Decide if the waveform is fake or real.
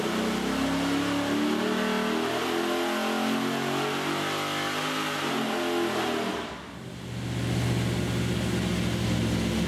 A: real